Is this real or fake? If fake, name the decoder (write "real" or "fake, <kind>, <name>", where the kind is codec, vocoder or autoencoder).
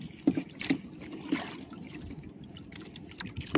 real